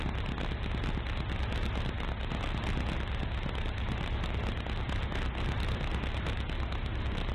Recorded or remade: recorded